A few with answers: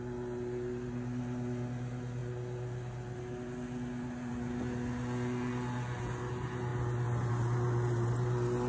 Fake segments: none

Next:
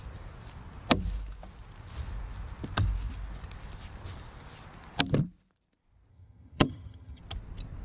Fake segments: 6.1-7.2 (vocoder, HiFi-GAN)

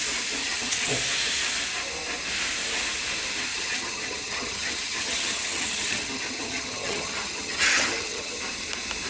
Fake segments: 0.4-0.9 (vocoder, HiFi-GAN); 3.5-8.4

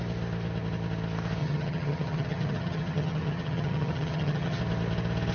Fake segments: 1.4-4.6 (vocoder, HiFi-GAN)

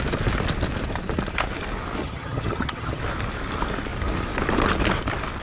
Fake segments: 2.0-3.0 (vocoder, HiFi-GAN)

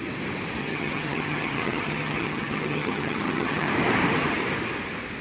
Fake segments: 0.6-3.7 (vocoder, HiFi-GAN)

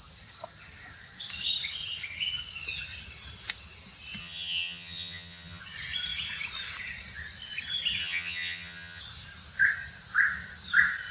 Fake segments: 4.2-5.6 (vocoder, HiFi-GAN); 8.0-9.0